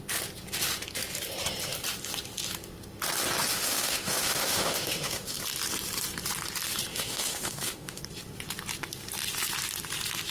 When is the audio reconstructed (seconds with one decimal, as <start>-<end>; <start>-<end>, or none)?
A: 3.5-5.4; 6.9-8.0